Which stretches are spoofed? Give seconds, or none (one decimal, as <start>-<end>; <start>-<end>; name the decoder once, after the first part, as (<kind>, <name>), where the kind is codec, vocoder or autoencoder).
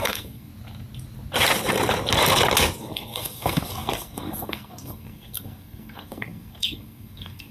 0.0-0.5 (codec, SNAC); 2.8-7.5